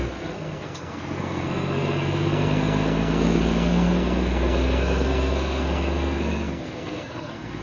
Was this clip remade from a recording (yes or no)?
yes